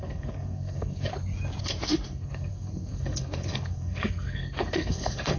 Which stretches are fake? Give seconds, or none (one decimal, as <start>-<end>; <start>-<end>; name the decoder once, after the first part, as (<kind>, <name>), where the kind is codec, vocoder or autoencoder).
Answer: 0.0-1.1 (codec, SNAC); 1.6-5.4